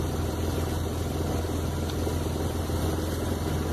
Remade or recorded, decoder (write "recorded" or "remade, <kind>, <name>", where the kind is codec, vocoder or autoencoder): recorded